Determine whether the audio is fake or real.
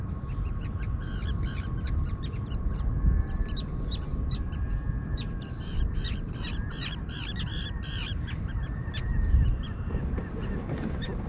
fake